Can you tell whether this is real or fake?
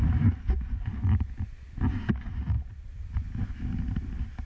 real